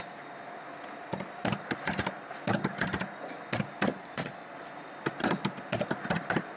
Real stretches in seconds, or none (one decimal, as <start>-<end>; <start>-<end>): 0.0-3.9; 4.5-6.6